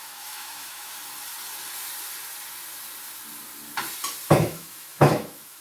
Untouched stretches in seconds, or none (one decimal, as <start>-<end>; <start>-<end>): 0.9-4.3